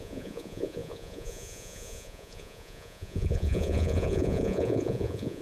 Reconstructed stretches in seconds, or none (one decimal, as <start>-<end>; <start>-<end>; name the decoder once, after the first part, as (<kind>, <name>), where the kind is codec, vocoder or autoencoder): 0.0-5.4 (vocoder, Vocos)